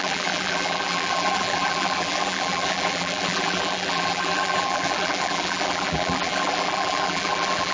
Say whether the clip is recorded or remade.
remade